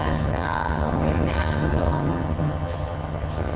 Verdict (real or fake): fake